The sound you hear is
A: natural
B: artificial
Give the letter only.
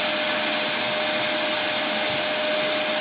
A